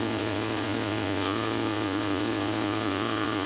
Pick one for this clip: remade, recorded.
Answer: remade